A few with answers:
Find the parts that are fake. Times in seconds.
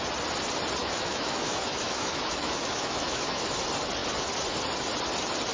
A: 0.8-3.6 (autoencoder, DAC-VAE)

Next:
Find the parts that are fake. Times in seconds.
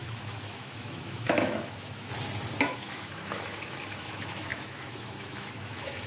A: 0.0-2.1 (autoencoder, DAC-VAE); 2.6-6.1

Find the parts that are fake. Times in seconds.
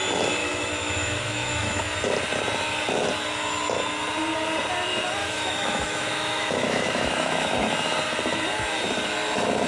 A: 0.4-1.8 (autoencoder, DAC-VAE); 5.2-7.7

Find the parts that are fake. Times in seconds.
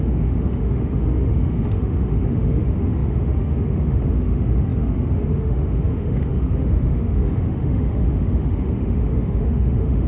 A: 0.0-10.1 (autoencoder, DAC-VAE)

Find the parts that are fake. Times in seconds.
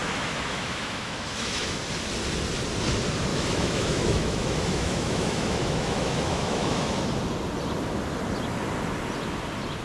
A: 0.0-1.8 (autoencoder, DAC-VAE); 3.3-7.0